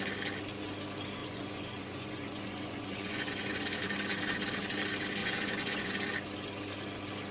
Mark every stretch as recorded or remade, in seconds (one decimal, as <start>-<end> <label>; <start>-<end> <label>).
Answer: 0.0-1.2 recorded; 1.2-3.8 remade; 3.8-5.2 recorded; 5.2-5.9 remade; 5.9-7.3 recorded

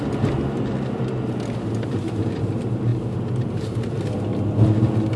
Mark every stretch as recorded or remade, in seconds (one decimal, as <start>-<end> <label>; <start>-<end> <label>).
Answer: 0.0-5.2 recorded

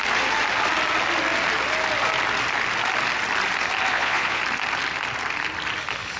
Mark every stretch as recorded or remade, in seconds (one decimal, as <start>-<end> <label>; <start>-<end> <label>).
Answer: 0.0-3.9 recorded; 3.9-4.4 remade; 4.4-6.2 recorded